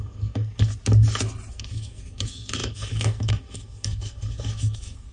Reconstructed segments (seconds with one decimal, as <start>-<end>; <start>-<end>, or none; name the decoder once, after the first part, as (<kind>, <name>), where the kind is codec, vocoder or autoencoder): 0.0-0.7 (codec, SNAC); 1.5-5.1